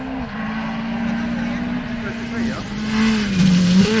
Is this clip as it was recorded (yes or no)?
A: yes